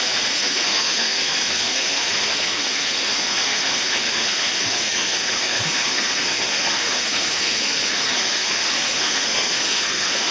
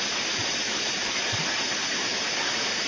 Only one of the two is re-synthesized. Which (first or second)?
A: first